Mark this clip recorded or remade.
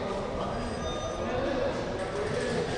recorded